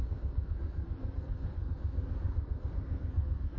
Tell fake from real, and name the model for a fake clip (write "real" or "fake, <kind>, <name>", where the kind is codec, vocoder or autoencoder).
fake, codec, SNAC